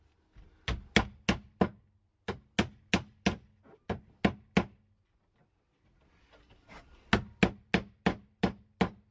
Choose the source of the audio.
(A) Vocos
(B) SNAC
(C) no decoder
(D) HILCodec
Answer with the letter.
C